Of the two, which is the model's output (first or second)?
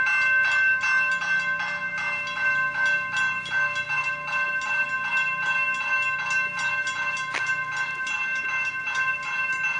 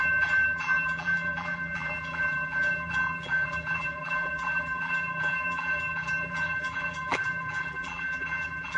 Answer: second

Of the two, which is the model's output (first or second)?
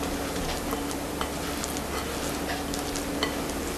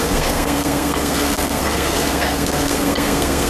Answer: second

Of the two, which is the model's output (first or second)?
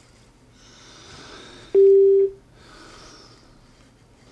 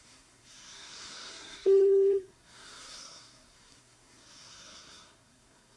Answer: second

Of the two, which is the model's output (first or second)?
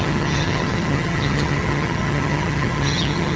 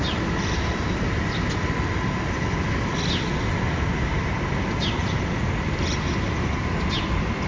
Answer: first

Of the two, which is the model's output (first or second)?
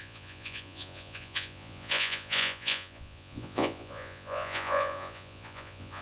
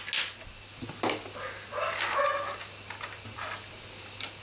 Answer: first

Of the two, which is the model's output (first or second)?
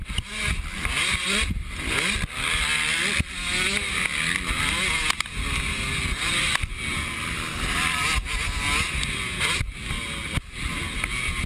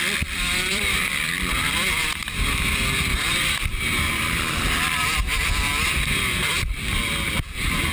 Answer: second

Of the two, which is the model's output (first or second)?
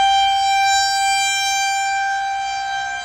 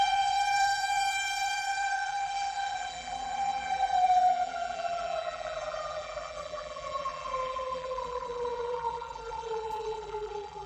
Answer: second